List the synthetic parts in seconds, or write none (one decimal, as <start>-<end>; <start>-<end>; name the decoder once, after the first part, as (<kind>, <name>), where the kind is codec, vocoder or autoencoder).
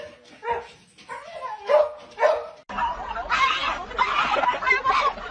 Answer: none